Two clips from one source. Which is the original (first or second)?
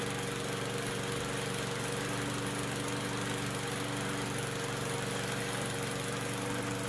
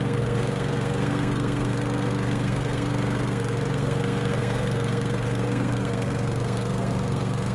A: first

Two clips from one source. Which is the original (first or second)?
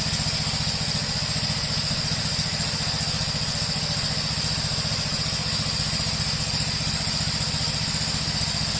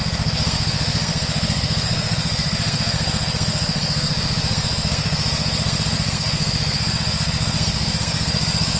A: first